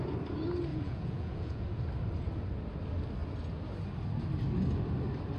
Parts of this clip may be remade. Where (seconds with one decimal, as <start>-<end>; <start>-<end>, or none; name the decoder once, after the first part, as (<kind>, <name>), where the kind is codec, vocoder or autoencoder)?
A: 0.7-1.8 (vocoder, Vocos)